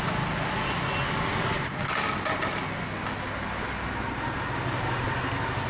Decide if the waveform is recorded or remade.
recorded